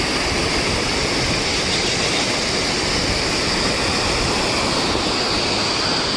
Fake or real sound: real